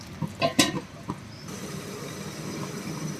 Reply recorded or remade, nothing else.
remade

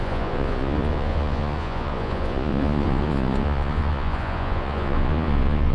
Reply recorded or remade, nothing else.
remade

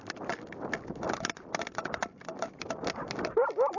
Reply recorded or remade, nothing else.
recorded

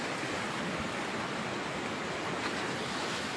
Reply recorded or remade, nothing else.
recorded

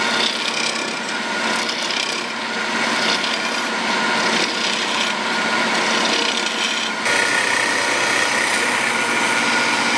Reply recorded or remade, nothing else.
recorded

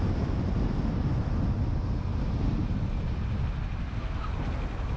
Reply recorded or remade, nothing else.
recorded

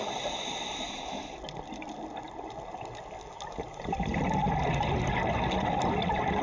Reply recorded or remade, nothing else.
recorded